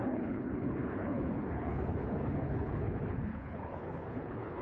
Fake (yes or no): yes